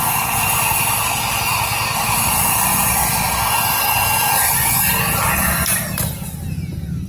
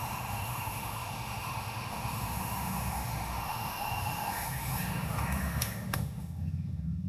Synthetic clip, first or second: second